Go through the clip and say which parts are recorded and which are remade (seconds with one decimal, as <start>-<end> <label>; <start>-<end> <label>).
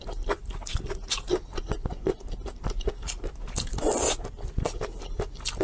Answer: 0.0-5.6 recorded